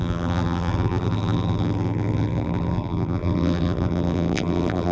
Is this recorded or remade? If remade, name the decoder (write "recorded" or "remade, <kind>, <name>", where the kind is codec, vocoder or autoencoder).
remade, vocoder, BigVGAN v2